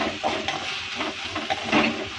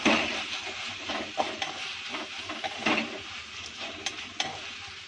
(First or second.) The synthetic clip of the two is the second